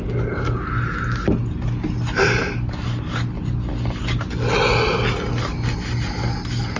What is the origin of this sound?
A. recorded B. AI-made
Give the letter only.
A